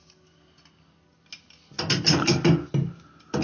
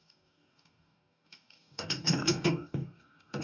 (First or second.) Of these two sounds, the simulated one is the second